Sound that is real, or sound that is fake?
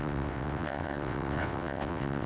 fake